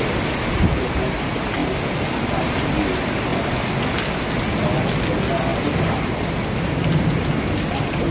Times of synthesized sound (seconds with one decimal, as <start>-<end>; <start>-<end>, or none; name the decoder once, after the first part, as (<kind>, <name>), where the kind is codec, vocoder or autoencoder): 1.6-2.7 (vocoder, BigVGAN v2); 5.5-7.3